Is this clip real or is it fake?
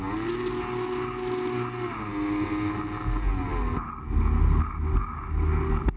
real